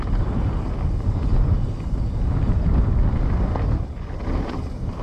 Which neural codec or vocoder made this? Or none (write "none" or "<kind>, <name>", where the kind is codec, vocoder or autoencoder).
none